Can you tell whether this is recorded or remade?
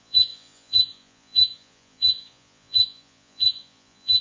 remade